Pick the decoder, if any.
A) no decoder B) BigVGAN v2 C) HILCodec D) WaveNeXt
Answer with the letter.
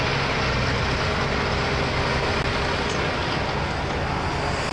A